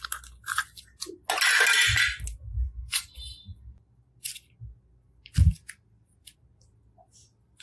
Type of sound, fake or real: real